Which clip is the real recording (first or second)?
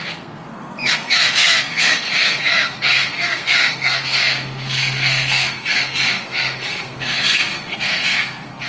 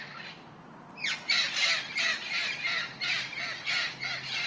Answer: second